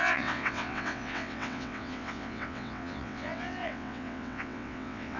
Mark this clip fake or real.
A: fake